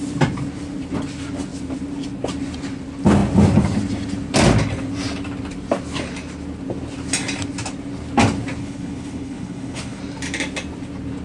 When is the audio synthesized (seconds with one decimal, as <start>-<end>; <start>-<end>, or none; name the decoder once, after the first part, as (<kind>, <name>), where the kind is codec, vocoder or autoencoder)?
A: 8.6-10.0 (codec, HILCodec)